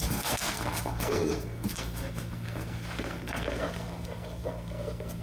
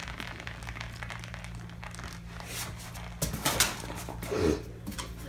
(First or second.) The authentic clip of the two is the second